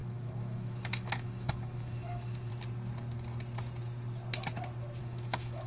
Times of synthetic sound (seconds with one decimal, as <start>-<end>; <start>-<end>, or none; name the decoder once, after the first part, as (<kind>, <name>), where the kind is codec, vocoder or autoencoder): 0.0-2.5 (autoencoder, DAC-VAE); 5.0-5.7

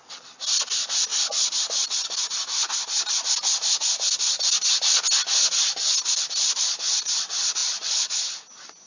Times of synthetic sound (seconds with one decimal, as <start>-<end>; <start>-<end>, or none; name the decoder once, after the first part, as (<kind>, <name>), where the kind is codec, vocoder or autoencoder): none

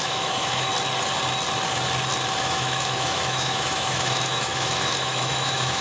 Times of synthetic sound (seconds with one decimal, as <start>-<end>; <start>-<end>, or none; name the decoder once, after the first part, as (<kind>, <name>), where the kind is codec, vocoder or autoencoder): 0.0-0.7 (autoencoder, DAC-VAE); 2.4-5.8

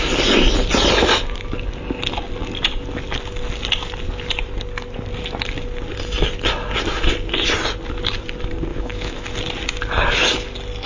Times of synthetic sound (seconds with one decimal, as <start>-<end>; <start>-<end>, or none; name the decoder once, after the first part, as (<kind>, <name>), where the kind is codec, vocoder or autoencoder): 8.7-9.3 (autoencoder, DAC-VAE)

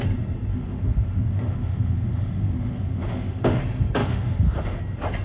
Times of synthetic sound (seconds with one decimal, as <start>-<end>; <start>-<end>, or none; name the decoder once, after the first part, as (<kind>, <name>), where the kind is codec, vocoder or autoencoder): 0.5-3.6 (autoencoder, DAC-VAE); 4.0-4.8

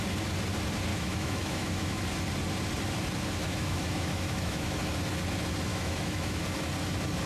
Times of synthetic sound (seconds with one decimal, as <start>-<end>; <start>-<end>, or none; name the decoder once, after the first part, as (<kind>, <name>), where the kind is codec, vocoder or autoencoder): 0.9-2.0 (autoencoder, DAC-VAE); 3.4-4.7; 5.7-6.4